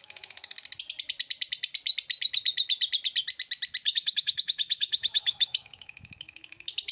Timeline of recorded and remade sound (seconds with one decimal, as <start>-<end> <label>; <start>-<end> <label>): 0.0-0.5 remade; 0.5-3.9 recorded; 3.9-6.9 remade